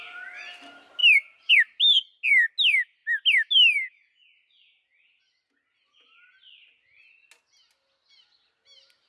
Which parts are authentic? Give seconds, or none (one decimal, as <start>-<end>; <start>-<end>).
0.0-9.1